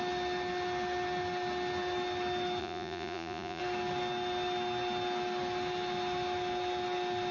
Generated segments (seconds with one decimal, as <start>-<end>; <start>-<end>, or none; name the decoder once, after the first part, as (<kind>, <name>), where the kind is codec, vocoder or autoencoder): 2.6-3.6 (vocoder, Vocos)